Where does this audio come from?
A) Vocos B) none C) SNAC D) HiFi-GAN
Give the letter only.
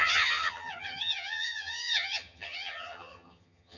D